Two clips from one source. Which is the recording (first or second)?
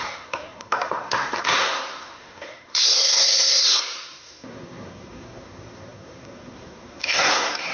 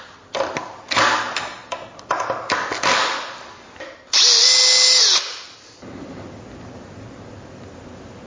second